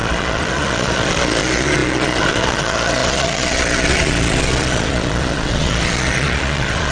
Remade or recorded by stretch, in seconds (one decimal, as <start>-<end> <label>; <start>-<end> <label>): 0.0-6.9 remade